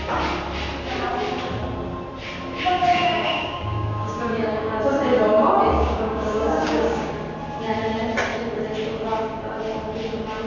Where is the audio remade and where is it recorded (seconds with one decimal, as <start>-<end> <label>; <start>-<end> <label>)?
0.0-2.9 recorded; 2.9-4.8 remade; 4.8-5.7 recorded; 5.7-7.1 remade; 7.1-10.5 recorded